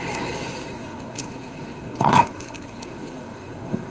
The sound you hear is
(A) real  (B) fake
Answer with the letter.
B